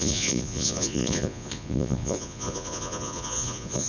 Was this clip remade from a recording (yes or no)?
yes